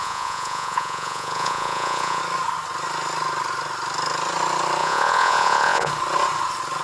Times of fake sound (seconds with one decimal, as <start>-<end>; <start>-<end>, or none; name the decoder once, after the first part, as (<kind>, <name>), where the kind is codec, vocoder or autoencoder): 0.0-2.2 (vocoder, Vocos); 4.8-5.9